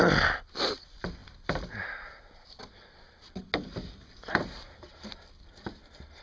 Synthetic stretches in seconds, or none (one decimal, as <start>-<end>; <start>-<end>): none